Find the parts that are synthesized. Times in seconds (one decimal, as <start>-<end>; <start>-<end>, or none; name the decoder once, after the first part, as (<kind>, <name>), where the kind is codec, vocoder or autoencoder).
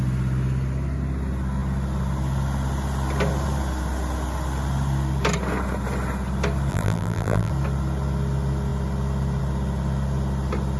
6.7-7.5 (vocoder, BigVGAN v2)